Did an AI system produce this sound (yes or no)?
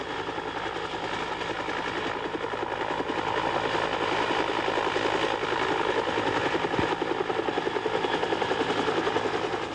no